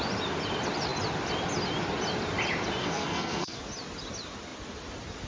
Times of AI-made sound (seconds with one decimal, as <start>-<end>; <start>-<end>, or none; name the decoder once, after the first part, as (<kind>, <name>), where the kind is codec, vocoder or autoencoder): 2.8-3.6 (codec, SNAC)